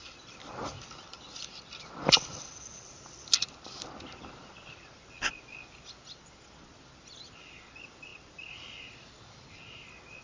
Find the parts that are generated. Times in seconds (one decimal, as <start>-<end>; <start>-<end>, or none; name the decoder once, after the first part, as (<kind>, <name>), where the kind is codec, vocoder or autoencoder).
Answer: none